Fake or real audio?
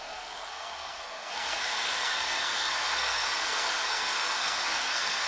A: fake